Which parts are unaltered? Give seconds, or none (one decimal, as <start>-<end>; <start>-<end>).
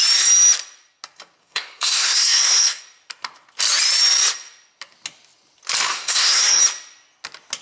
0.0-1.4; 2.8-5.9; 6.6-7.6